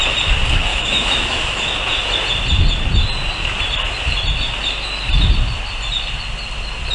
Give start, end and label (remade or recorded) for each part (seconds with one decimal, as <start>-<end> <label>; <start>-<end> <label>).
0.0-0.7 recorded; 0.7-1.7 remade; 1.7-6.9 recorded